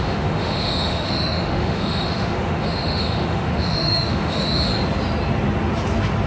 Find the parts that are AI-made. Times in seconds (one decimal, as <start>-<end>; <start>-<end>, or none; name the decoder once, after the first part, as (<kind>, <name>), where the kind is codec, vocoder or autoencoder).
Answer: 0.0-4.7 (autoencoder, DAC-VAE)

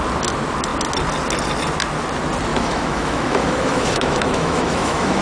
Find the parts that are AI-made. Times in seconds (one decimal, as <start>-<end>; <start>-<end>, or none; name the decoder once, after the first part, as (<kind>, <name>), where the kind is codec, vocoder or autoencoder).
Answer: 2.5-5.2 (autoencoder, DAC-VAE)

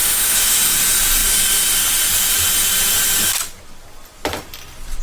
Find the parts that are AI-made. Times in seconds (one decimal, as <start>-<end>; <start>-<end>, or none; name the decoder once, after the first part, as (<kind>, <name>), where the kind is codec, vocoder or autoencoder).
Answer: 0.0-0.6 (autoencoder, DAC-VAE)

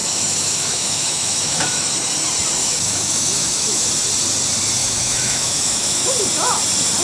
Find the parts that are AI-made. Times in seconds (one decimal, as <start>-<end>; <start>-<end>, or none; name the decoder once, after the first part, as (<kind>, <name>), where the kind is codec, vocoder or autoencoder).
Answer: 0.0-1.9 (autoencoder, DAC-VAE); 2.6-3.9; 4.8-6.1